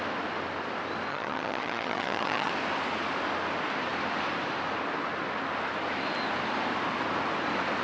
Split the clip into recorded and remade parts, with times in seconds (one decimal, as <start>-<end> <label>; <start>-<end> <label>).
0.0-1.1 recorded; 1.1-2.5 remade; 2.5-7.8 recorded